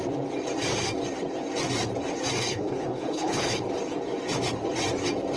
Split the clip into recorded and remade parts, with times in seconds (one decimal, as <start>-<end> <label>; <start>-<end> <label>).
0.0-2.4 recorded; 2.4-3.6 remade; 3.6-5.4 recorded